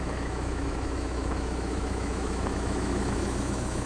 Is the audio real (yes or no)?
no